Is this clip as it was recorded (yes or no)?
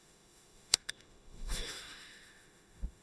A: no